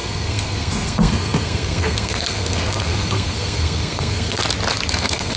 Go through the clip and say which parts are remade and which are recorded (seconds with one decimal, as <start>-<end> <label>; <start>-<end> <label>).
0.0-4.4 remade; 4.4-4.9 recorded; 4.9-5.4 remade